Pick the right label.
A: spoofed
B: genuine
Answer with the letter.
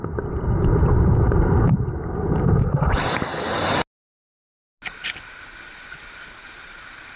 B